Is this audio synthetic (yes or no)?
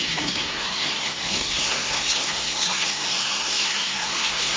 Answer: yes